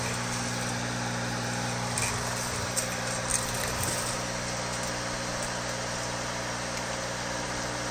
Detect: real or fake real